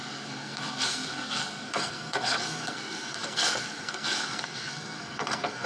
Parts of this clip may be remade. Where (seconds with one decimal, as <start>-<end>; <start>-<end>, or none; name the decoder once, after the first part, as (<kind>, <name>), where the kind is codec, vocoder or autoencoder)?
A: 0.0-5.7 (codec, SNAC)